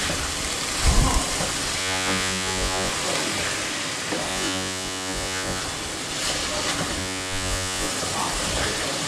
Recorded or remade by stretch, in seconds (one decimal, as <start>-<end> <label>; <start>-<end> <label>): 0.0-1.8 recorded; 1.8-2.9 remade; 2.9-4.3 recorded; 4.3-5.6 remade; 5.6-7.0 recorded; 7.0-7.9 remade; 7.9-9.1 recorded